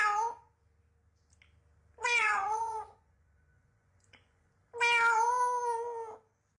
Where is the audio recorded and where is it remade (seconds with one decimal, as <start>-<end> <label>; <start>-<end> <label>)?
0.0-2.0 recorded; 2.0-4.5 remade; 4.5-6.6 recorded